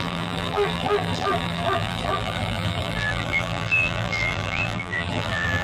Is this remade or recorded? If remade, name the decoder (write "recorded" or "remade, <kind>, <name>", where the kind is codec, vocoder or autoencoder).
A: remade, vocoder, BigVGAN v2